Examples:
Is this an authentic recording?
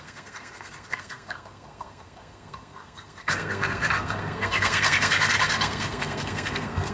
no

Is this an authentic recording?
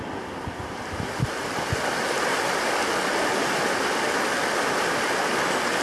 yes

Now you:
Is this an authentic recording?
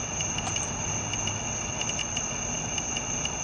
yes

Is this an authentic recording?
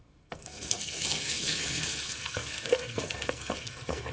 no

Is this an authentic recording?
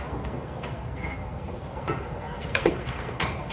no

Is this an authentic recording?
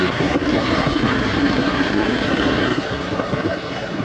no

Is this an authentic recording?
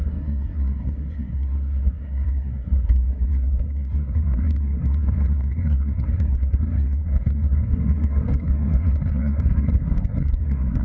no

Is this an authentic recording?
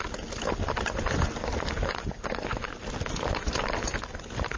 yes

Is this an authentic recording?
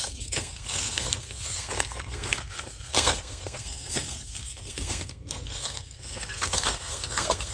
no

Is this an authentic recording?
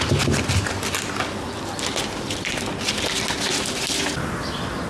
yes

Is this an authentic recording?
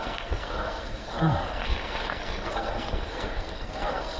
no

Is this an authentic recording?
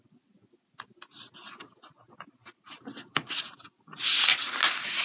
yes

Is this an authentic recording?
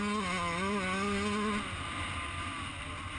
yes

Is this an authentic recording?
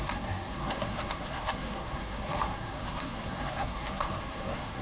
no